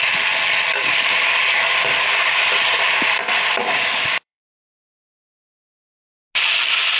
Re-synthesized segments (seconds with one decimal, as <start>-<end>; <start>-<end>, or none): 3.6-4.5